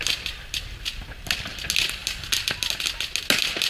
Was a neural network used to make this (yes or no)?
no